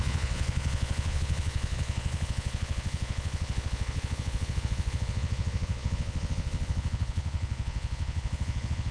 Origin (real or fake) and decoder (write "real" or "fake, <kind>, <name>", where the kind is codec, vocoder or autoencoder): fake, vocoder, Vocos